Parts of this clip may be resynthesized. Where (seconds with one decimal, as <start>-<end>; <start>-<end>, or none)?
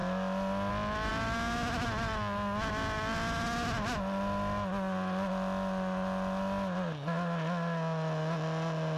none